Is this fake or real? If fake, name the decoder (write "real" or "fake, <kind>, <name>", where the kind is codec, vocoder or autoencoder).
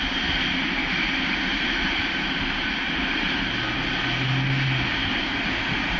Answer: real